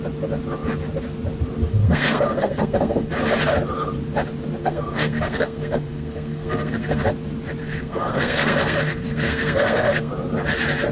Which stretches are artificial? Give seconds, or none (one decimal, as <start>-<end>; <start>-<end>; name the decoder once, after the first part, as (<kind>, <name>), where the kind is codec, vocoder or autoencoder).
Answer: 1.7-3.1 (codec, SNAC); 4.6-7.0; 7.6-10.1